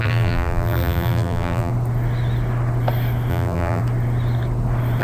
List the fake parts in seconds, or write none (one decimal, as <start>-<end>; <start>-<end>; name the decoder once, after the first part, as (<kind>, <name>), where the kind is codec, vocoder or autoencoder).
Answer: 0.0-1.7 (vocoder, BigVGAN v2); 3.3-3.8